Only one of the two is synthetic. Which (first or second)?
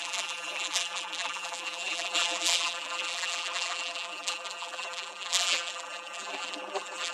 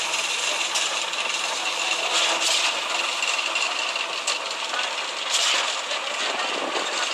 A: first